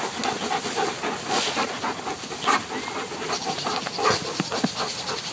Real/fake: real